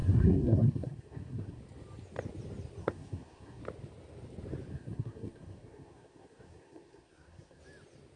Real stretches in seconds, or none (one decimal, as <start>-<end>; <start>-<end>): 1.6-2.8; 3.6-4.7; 7.6-8.2